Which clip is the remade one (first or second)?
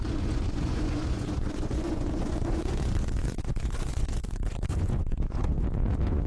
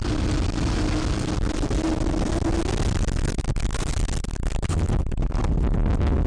first